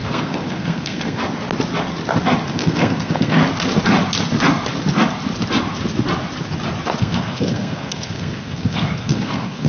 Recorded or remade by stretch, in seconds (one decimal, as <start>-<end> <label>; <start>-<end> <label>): 0.0-1.2 remade; 1.2-2.5 recorded; 2.5-3.4 remade; 3.4-7.0 recorded; 7.0-9.7 remade

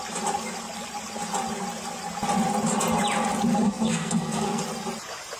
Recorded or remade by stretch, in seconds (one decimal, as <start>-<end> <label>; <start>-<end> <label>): 0.0-3.5 recorded; 3.5-4.6 remade; 4.6-5.4 recorded

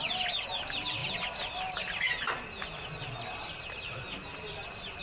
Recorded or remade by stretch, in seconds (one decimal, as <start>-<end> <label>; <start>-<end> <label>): 0.0-5.0 recorded